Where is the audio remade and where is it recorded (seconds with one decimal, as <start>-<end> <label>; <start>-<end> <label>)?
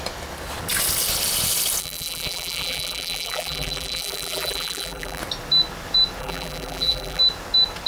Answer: 0.0-1.8 recorded; 1.8-5.2 remade; 5.2-6.2 recorded; 6.2-7.2 remade; 7.2-7.9 recorded